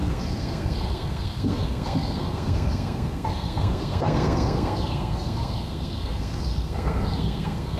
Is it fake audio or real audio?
fake